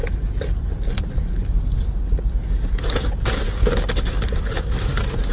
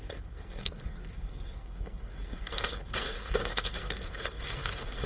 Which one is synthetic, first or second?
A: second